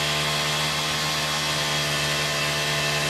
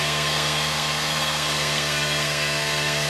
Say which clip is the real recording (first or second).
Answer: first